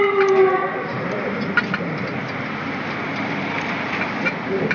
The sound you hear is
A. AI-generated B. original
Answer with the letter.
B